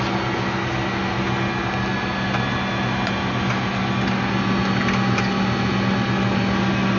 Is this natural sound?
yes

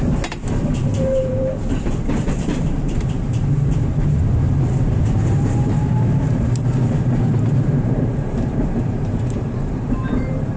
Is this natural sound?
no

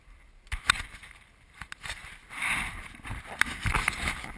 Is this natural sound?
yes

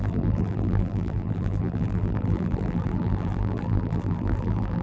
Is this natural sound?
no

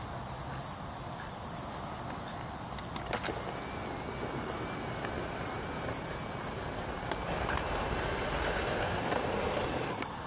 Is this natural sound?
yes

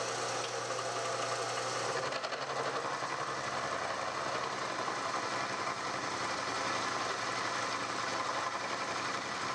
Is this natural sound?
yes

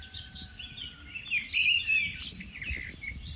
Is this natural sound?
no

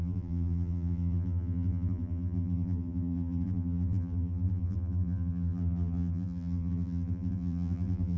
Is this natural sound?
no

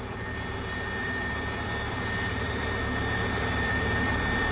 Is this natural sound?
no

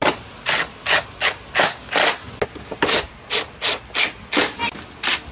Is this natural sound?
yes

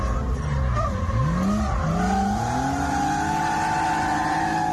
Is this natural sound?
yes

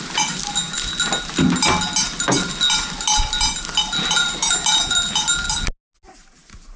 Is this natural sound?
yes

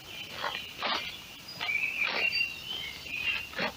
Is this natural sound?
yes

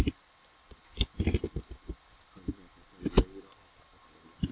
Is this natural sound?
yes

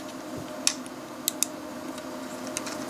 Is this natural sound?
yes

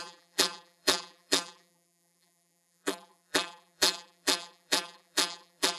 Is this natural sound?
no